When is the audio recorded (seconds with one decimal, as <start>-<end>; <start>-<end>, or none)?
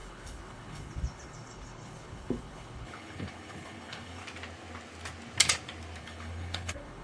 4.2-6.0